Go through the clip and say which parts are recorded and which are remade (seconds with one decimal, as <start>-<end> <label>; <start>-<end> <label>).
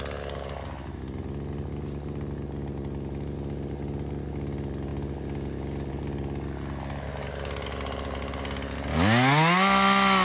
0.0-10.2 recorded